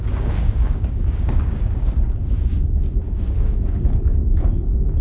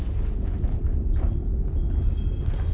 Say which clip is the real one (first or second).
second